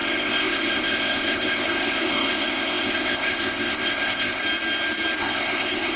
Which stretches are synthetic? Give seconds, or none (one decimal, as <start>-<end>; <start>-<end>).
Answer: 0.0-4.4; 5.2-6.0